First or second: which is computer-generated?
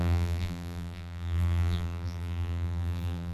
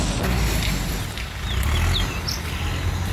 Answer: first